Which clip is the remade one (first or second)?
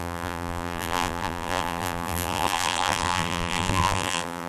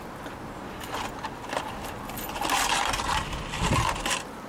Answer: first